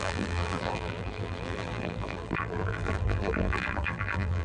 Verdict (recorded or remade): remade